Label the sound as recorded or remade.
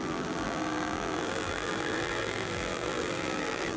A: remade